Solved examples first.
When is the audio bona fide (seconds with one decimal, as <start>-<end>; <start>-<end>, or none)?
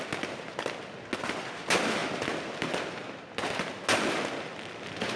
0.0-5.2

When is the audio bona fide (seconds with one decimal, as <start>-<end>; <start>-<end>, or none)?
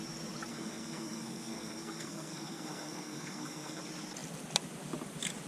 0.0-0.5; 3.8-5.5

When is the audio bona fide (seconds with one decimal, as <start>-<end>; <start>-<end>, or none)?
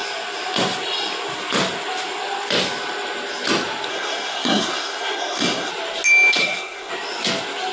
0.0-3.9; 5.7-6.4; 6.9-7.7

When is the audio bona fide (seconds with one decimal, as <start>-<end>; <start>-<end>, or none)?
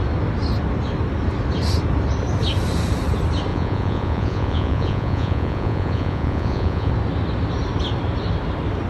0.0-3.5; 6.9-8.9